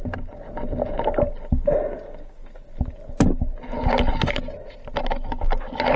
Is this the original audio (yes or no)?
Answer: yes